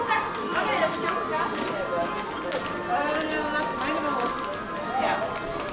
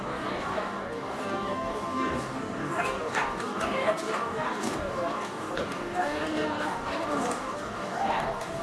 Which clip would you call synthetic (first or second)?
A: second